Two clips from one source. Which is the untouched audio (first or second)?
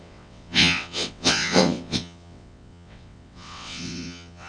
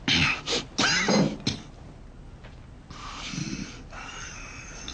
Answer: second